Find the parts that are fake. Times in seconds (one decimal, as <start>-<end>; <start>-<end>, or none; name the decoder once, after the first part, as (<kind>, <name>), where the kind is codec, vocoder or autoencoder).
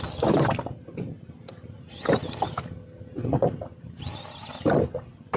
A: none